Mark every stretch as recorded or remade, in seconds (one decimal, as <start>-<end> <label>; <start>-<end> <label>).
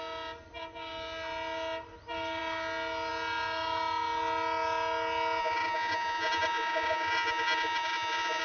0.0-5.4 recorded; 5.4-8.4 remade